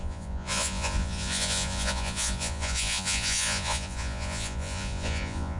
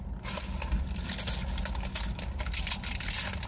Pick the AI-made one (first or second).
first